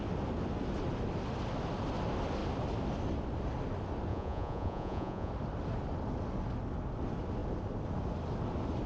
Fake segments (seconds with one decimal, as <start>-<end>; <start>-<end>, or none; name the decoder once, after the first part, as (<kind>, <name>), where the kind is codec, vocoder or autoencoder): 4.1-5.3 (vocoder, Vocos)